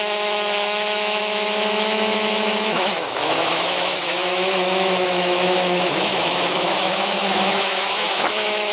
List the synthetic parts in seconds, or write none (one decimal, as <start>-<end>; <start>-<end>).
0.0-8.7